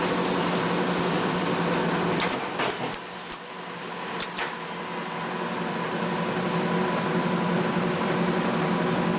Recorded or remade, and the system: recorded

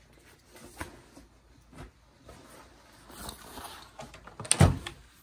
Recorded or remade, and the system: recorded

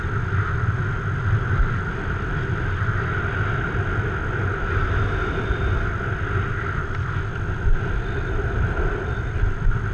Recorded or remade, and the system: recorded